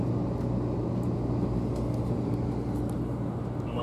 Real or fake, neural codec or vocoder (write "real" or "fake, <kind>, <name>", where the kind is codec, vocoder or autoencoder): real